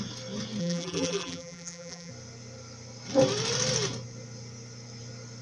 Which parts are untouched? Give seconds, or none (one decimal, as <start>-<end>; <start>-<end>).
0.0-0.6; 2.1-5.4